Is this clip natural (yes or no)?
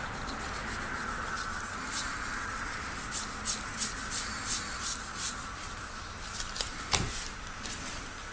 yes